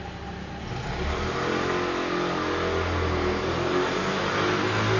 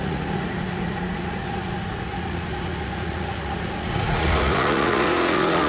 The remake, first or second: second